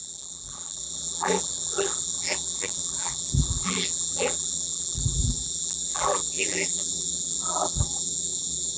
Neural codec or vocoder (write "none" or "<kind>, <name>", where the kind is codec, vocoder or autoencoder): vocoder, BigVGAN v2